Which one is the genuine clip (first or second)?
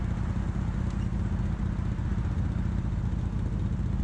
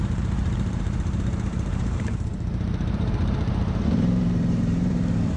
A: first